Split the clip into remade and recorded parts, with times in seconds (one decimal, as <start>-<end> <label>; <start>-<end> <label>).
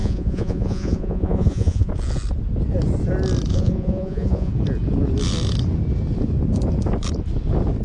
0.0-1.9 remade; 1.9-3.5 recorded; 3.5-4.5 remade; 4.5-7.8 recorded